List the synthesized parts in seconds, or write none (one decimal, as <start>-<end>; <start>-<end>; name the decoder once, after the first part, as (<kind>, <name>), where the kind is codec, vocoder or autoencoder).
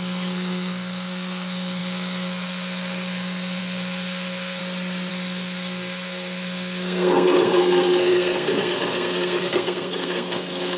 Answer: 0.0-4.6 (codec, SNAC); 5.1-10.8